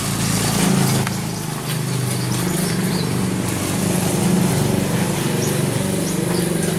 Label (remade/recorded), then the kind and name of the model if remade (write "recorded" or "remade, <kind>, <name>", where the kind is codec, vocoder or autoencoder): recorded